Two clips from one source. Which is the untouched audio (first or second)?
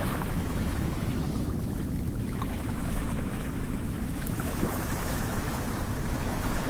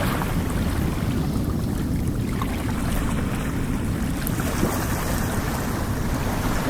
second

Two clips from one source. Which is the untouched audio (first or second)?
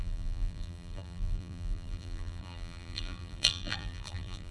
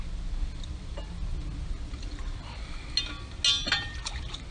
second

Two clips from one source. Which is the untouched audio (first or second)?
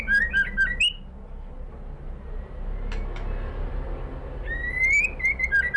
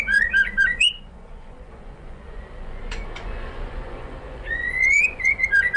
first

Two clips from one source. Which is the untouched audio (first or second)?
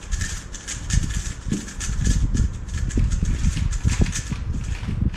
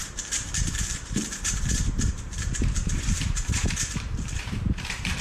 first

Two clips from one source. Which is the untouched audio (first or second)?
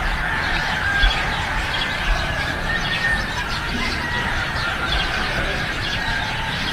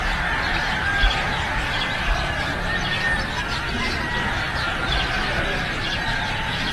second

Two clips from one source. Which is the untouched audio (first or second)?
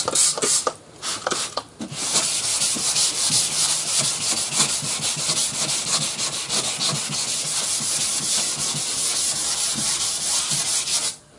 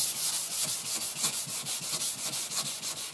first